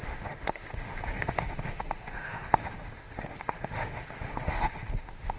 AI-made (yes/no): yes